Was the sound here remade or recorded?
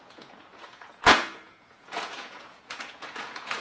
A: remade